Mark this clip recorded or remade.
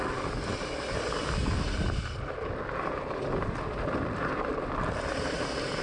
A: recorded